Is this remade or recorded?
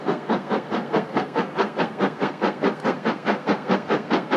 remade